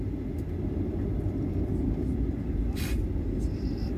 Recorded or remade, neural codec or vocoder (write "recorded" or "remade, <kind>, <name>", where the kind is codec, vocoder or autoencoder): recorded